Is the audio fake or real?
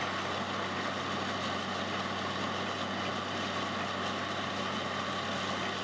real